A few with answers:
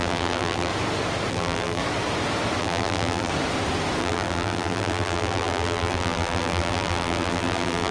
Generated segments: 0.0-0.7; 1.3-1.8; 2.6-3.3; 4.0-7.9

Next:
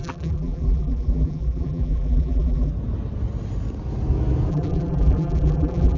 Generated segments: 0.0-2.7; 4.5-6.0

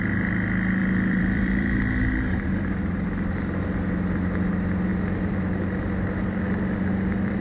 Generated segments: 0.8-1.8

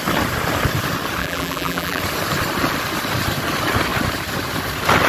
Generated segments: 1.2-2.0

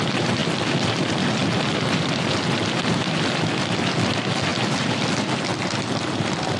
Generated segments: 1.4-3.3; 4.5-5.1; 5.5-6.6

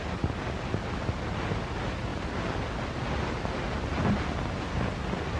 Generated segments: none